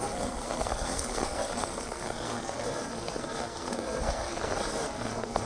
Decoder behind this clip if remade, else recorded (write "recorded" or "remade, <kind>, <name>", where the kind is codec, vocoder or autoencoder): remade, codec, SNAC